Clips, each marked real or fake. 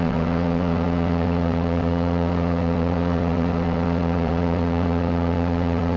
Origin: fake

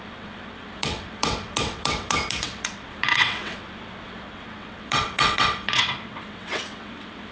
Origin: fake